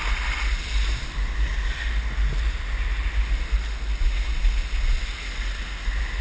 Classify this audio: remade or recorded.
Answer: recorded